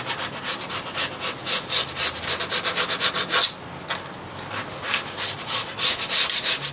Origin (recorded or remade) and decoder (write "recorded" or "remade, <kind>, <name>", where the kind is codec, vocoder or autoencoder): recorded